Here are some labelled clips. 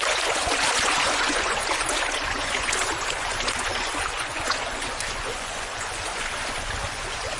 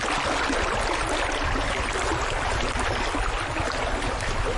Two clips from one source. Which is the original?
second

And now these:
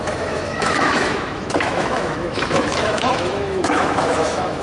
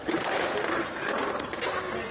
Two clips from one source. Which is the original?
second